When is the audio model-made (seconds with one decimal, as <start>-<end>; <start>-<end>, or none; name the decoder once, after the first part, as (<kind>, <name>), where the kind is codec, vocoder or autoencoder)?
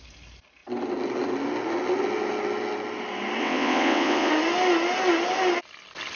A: 3.4-4.3 (vocoder, WaveNeXt)